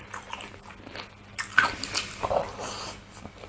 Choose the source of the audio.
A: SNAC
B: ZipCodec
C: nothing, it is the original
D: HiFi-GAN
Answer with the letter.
C